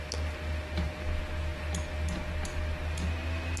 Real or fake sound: real